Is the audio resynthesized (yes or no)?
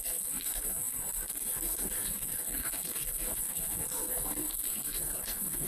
yes